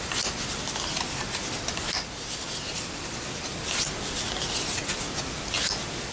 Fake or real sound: real